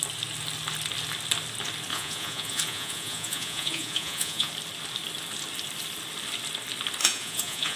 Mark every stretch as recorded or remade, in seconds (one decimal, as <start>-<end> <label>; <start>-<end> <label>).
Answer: 0.0-1.9 recorded; 1.9-4.5 remade; 4.5-7.0 recorded; 7.0-7.8 remade